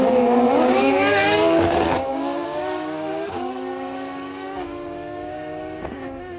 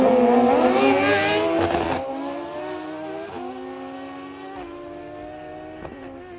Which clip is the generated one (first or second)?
first